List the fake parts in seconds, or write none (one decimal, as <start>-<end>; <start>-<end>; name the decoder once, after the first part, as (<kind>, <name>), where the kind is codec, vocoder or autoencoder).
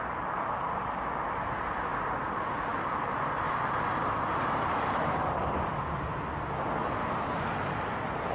none